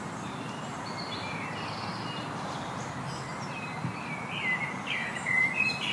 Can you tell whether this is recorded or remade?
remade